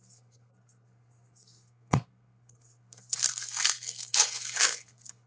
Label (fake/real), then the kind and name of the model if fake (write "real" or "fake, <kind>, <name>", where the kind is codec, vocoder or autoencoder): fake, codec, SNAC